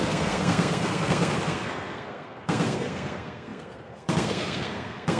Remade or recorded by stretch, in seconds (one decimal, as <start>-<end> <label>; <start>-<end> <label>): 0.0-5.2 remade